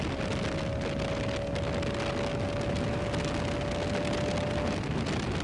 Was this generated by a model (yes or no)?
no